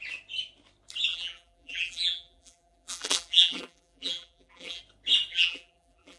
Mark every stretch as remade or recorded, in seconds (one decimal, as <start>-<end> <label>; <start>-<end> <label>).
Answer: 0.0-1.1 recorded; 1.1-4.8 remade; 4.8-5.3 recorded; 5.3-6.2 remade